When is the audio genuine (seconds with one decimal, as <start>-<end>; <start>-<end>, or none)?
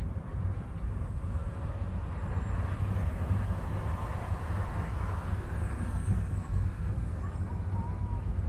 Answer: 0.0-5.6; 7.2-8.5